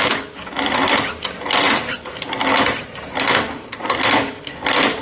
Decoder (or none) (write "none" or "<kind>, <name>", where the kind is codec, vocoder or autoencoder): none